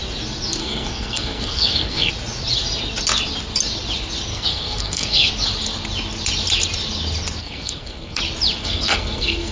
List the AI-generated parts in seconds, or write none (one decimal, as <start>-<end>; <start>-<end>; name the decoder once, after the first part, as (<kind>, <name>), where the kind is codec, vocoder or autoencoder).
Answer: 0.6-2.1 (codec, SNAC); 4.3-5.3; 7.4-8.2; 8.6-9.5